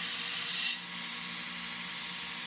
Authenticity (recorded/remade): recorded